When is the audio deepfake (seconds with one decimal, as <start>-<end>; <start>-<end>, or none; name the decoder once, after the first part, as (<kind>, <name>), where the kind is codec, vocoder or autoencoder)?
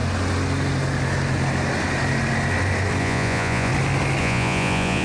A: 3.0-3.7 (vocoder, Vocos); 4.2-5.0